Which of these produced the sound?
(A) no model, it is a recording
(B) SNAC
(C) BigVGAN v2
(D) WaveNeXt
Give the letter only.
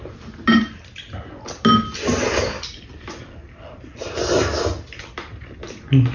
A